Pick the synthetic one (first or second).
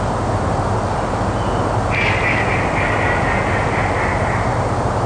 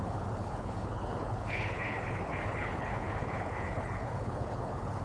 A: second